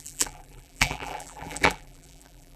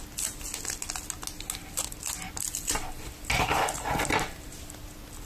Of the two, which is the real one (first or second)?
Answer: second